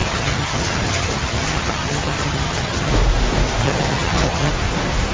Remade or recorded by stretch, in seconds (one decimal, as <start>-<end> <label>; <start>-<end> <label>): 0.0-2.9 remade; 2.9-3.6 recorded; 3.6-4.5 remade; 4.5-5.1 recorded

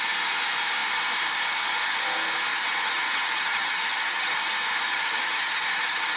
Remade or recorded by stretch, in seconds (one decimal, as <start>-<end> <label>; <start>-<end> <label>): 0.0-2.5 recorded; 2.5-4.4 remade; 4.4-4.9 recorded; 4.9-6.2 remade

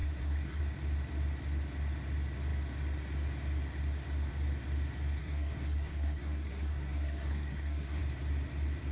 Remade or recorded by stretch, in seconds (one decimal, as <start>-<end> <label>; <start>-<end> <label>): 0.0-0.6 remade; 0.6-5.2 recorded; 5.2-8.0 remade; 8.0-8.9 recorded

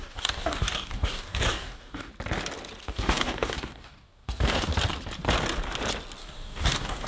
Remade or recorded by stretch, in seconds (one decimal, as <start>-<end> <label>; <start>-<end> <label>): 0.0-2.1 remade; 2.1-2.8 recorded; 2.8-4.7 remade; 4.7-6.2 recorded; 6.2-7.1 remade

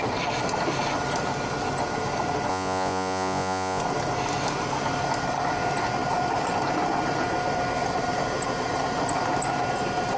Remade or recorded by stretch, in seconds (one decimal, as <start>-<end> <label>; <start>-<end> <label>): 0.0-2.5 recorded; 2.5-3.8 remade; 3.8-10.2 recorded

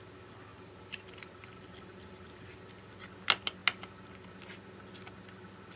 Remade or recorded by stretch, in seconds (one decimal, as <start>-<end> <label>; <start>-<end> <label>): 0.0-0.5 recorded; 0.5-3.0 remade; 3.0-5.8 recorded

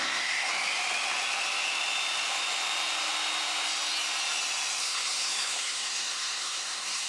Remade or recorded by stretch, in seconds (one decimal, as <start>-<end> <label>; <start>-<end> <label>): 0.0-0.5 remade; 0.5-4.8 recorded; 4.8-7.1 remade